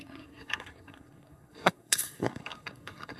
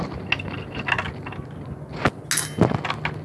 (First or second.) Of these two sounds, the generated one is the first